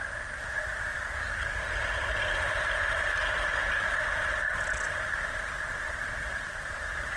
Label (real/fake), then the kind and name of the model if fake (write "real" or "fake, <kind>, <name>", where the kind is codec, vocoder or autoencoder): real